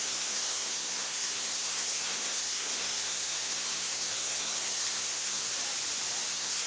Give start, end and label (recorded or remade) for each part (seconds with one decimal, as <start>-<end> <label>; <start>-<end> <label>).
0.0-5.5 remade; 5.5-6.3 recorded; 6.3-6.7 remade